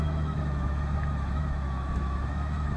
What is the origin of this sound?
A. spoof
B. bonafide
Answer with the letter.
A